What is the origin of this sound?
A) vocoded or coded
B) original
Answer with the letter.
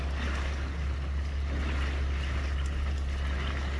B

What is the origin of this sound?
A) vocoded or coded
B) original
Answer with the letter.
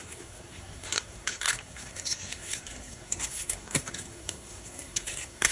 A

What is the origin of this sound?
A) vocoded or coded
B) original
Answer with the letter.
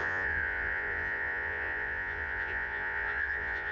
A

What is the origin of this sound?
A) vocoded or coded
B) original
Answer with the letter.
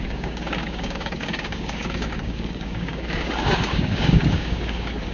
A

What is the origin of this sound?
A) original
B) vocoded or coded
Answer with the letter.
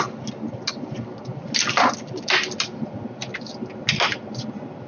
A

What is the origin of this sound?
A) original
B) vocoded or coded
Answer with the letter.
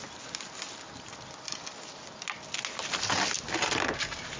A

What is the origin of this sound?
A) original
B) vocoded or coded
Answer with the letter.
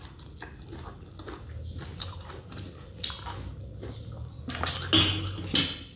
A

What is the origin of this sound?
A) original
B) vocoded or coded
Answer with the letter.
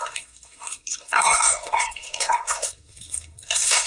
B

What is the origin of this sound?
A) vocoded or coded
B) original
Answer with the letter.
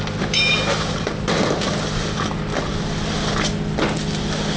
B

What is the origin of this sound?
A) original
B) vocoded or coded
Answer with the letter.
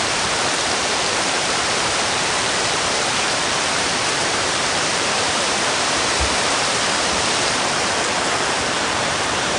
B